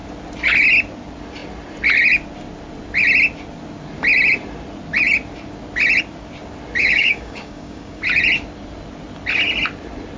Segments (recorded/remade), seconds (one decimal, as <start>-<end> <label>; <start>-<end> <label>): 0.0-6.8 recorded; 6.8-8.0 remade; 8.0-10.2 recorded